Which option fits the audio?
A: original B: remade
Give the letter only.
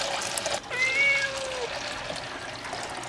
A